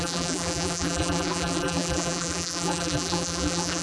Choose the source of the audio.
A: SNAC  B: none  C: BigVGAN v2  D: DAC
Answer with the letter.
C